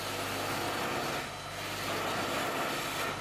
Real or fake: real